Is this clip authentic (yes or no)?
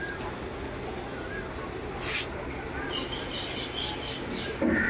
yes